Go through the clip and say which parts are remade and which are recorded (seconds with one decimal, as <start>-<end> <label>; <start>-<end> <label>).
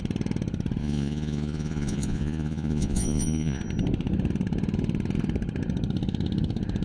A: 0.0-0.8 recorded; 0.8-3.6 remade; 3.6-6.8 recorded